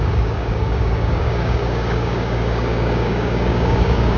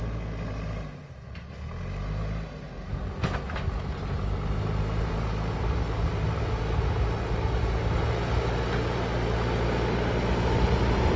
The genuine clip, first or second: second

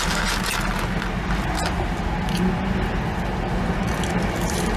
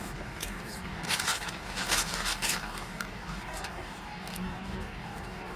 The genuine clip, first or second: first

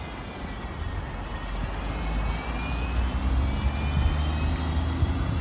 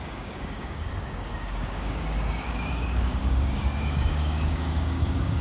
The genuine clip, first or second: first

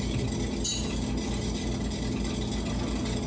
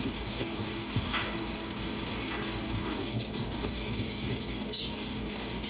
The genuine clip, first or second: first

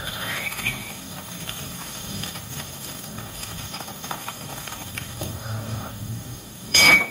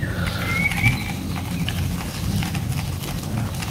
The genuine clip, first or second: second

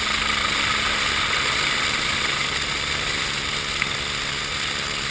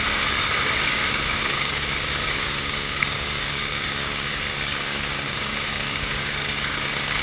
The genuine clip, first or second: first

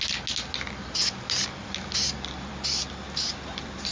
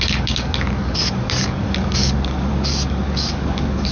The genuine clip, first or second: first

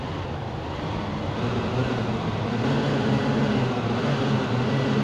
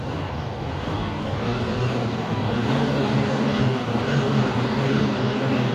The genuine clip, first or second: first